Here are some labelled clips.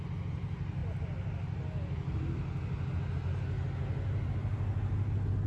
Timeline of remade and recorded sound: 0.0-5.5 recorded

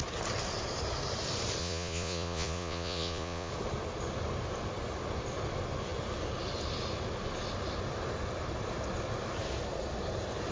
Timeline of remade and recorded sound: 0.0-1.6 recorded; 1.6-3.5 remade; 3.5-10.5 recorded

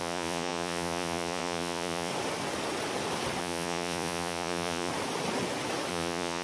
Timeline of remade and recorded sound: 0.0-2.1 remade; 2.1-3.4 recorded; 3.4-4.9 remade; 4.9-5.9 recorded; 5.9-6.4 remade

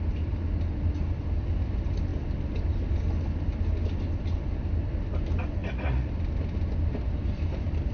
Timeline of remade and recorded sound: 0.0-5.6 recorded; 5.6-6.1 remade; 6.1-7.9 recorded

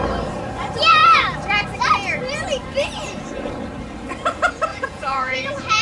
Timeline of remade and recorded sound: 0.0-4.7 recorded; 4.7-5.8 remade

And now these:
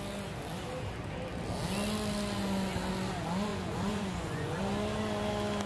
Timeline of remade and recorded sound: 0.0-3.5 recorded; 3.5-4.6 remade; 4.6-5.7 recorded

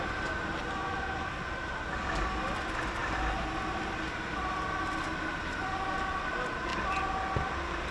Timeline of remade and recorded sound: 0.0-7.9 recorded